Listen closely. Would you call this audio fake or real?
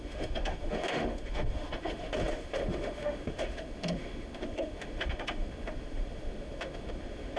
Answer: fake